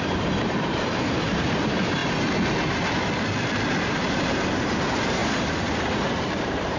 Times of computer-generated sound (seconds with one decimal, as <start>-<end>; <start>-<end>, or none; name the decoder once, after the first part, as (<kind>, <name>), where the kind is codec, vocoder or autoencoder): 0.0-2.0 (vocoder, BigVGAN v2); 3.8-6.8